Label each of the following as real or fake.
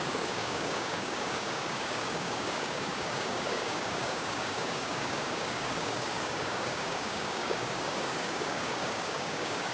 fake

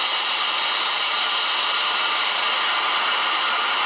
real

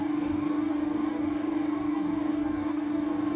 fake